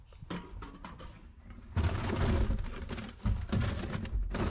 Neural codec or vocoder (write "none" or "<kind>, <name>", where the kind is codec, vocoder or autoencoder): none